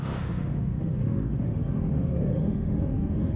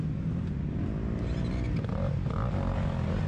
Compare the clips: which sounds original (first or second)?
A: second